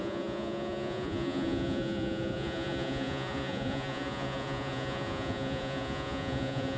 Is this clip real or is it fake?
fake